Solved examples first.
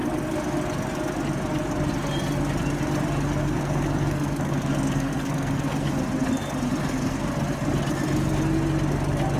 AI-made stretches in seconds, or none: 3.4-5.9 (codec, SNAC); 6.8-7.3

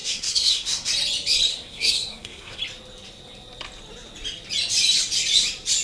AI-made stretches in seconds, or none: 0.0-0.9 (codec, SNAC); 1.5-2.6

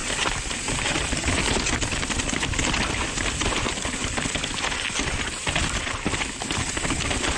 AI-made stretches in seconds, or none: none

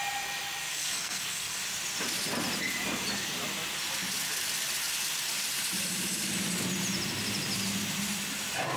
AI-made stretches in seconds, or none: 0.7-1.6 (codec, SNAC)

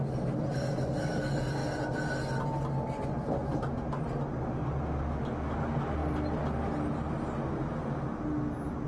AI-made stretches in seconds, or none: none

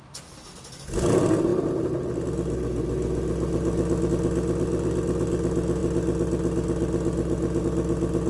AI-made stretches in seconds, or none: none

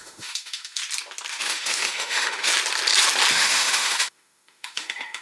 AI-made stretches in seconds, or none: 0.0-0.8 (autoencoder, DAC-VAE); 1.3-2.5; 3.3-5.2